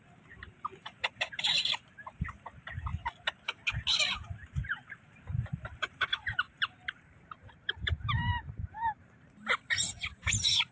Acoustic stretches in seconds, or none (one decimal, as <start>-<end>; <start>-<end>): 2.9-4.0